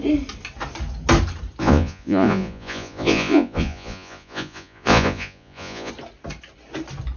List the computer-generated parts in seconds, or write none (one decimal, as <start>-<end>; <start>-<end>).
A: 1.6-5.9